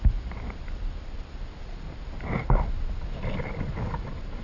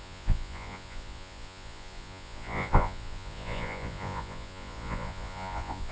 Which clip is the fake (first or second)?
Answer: second